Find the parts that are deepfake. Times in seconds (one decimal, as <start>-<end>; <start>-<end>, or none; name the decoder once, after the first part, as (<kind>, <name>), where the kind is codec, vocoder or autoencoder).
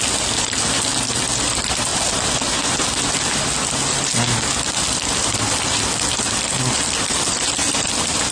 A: none